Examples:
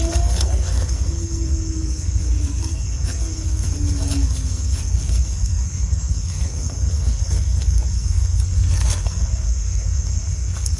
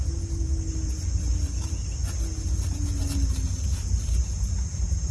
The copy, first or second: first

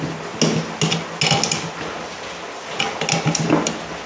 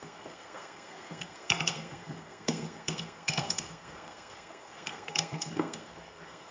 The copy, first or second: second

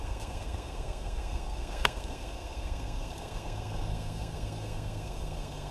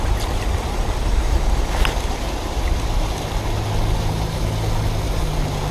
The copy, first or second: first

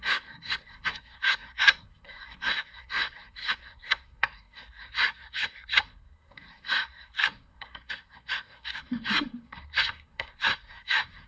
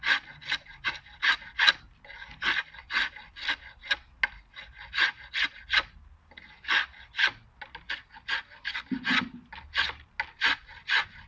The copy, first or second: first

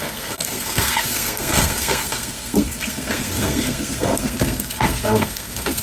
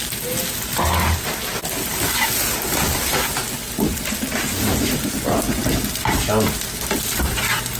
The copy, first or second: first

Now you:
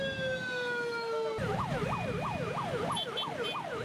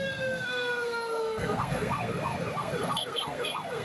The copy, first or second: second